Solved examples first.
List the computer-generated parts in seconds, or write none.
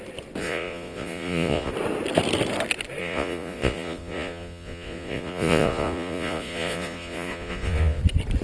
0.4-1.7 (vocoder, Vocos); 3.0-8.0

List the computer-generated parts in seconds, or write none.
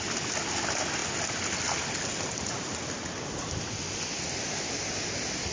none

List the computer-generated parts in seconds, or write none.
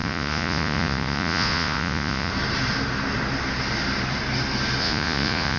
0.0-2.3 (vocoder, Vocos); 4.8-5.6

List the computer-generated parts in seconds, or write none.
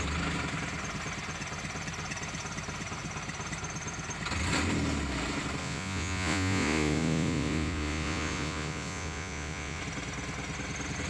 5.6-9.8 (vocoder, Vocos)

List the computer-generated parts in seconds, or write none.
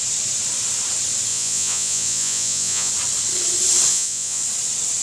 1.3-2.9 (vocoder, Vocos); 3.9-4.4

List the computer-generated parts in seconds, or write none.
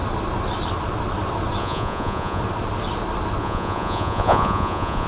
1.6-2.4 (vocoder, Vocos); 3.4-5.1